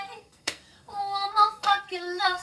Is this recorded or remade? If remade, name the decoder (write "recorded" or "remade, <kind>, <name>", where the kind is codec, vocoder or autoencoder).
remade, codec, SNAC